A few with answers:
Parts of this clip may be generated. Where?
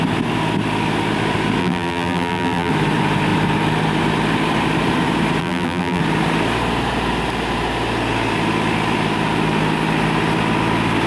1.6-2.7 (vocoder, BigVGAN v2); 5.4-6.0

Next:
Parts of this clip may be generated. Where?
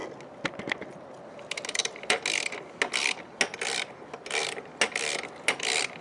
none